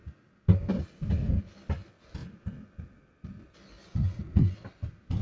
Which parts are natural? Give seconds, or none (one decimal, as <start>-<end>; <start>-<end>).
0.0-5.2